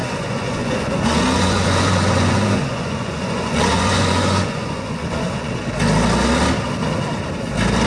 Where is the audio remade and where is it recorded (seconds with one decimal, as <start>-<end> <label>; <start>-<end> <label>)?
0.0-5.5 remade; 5.5-7.9 recorded